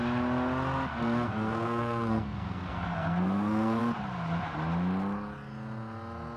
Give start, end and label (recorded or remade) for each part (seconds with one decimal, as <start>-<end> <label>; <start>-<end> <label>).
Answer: 0.0-0.9 recorded; 0.9-3.8 remade; 3.8-6.4 recorded

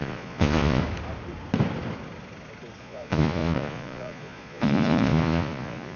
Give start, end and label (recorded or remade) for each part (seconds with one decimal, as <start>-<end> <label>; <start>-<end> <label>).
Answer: 0.0-0.8 remade; 0.8-2.8 recorded; 2.8-6.0 remade

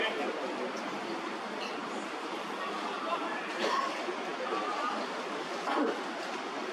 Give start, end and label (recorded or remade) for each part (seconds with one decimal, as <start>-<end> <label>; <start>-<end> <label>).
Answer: 0.0-1.8 recorded; 1.8-3.7 remade; 3.7-6.7 recorded

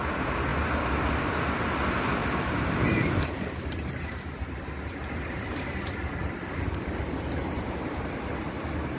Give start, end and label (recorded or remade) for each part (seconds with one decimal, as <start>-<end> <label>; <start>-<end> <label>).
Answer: 0.0-2.2 recorded; 2.2-5.8 remade; 5.8-9.0 recorded

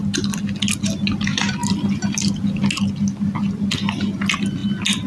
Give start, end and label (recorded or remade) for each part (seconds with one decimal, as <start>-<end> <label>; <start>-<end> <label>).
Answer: 0.0-5.1 recorded